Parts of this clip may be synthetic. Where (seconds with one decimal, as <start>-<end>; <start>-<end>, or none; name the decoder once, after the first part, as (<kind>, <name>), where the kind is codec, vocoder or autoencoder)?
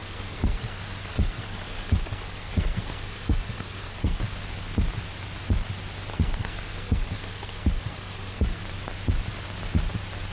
0.0-4.2 (codec, SNAC); 6.1-8.6